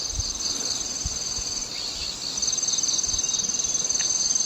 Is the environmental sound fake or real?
real